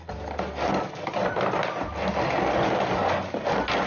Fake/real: real